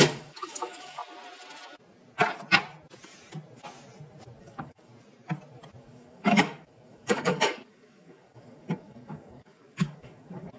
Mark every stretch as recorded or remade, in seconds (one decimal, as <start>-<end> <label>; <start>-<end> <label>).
0.0-1.0 remade; 1.0-4.4 recorded; 4.4-4.9 remade; 4.9-5.8 recorded; 5.8-10.6 remade